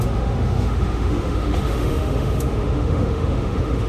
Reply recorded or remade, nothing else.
remade